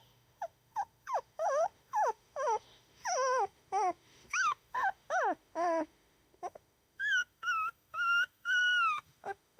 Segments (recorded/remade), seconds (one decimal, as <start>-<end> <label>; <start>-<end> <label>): 0.0-9.6 remade